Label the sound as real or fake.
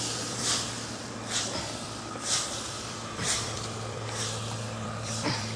fake